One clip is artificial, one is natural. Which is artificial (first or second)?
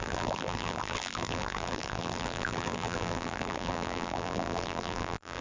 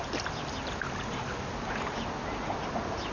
first